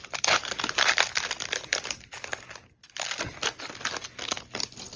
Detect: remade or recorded recorded